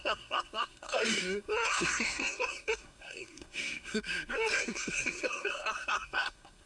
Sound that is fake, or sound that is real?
fake